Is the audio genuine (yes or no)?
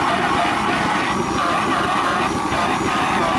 yes